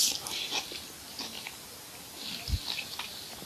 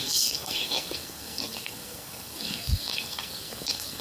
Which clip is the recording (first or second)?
first